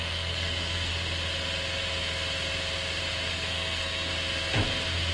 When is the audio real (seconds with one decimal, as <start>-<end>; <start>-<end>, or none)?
0.9-3.3; 4.1-5.1